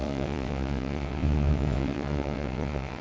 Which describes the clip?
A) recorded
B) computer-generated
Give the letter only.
B